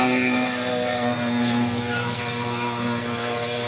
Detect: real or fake fake